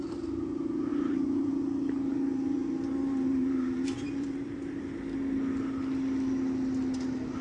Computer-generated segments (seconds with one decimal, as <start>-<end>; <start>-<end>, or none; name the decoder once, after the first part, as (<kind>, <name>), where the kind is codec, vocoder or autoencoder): 0.9-1.5 (vocoder, BigVGAN v2); 2.1-4.8